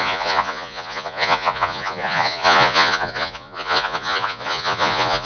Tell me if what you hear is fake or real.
fake